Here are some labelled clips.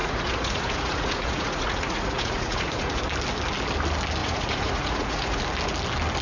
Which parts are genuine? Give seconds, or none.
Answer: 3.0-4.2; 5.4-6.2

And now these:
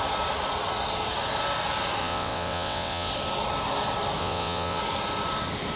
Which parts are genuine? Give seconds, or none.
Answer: 0.0-2.0; 3.1-4.2; 4.8-5.8

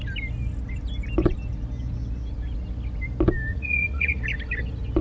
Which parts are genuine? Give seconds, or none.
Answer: 0.0-3.5; 4.2-5.0